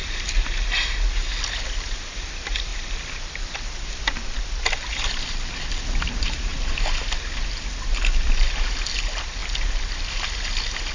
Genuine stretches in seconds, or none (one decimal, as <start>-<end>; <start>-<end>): 0.0-9.4